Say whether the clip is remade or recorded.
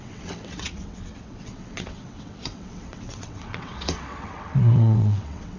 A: remade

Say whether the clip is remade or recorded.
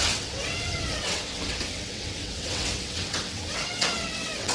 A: remade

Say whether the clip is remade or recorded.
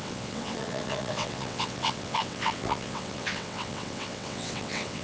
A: remade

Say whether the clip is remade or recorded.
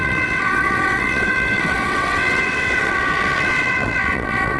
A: remade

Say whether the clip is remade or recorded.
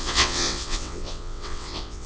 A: remade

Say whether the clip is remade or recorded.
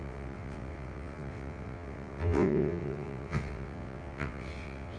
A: remade